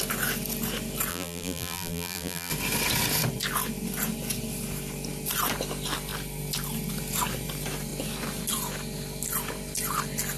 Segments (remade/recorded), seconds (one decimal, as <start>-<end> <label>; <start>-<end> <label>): 0.0-1.1 recorded; 1.1-2.5 remade; 2.5-10.4 recorded